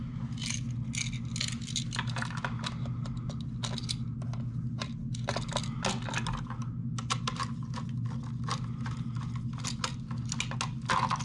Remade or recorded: recorded